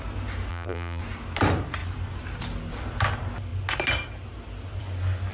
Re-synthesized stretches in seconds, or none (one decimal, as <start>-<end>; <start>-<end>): 0.5-1.0